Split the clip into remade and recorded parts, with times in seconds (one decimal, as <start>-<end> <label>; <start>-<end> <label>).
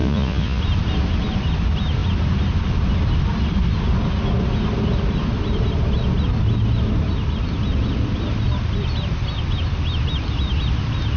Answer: 0.0-0.6 remade; 0.6-11.2 recorded